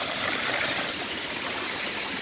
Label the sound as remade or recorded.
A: recorded